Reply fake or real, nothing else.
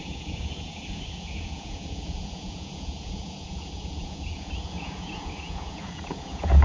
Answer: fake